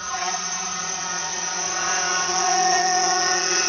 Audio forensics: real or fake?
fake